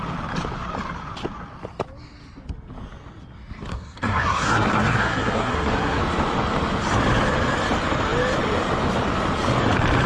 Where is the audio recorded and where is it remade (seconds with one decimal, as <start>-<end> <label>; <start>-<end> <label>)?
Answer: 0.0-3.7 recorded; 3.7-6.0 remade; 6.0-10.1 recorded